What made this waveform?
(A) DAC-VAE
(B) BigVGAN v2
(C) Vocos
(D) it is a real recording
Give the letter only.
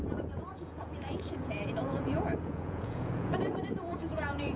C